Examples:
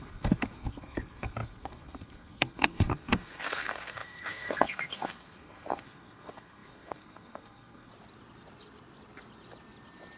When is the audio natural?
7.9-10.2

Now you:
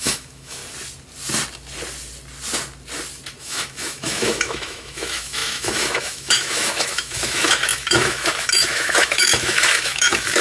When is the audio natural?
0.6-3.4

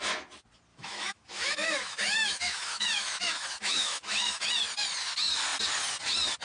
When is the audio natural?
0.0-0.7; 4.5-6.4

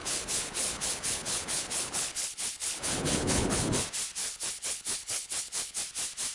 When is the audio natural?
3.8-4.2; 5.8-6.3

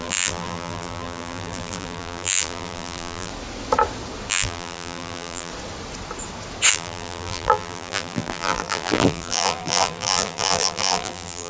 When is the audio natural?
3.3-4.3; 5.5-6.7

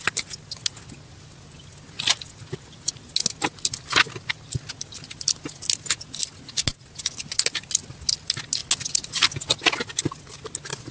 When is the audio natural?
0.0-10.9

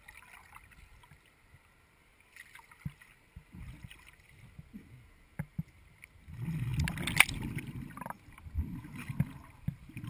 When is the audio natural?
0.0-10.1